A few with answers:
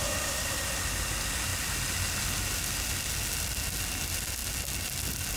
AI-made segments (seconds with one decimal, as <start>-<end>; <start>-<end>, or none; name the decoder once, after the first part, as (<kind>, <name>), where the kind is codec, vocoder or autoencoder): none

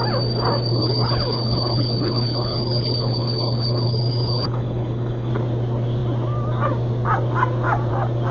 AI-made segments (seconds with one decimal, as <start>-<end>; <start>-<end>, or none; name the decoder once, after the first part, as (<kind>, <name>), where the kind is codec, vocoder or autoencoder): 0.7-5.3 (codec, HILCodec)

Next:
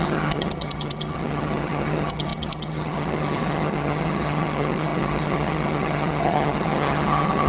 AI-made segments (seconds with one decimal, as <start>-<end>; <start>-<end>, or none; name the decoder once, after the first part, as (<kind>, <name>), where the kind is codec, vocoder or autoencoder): 0.0-7.5 (vocoder, HiFi-GAN)